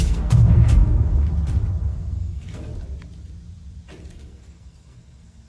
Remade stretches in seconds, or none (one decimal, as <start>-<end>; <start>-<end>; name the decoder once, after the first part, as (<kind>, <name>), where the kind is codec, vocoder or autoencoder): 0.0-1.3 (codec, SNAC); 1.8-2.7; 4.0-5.5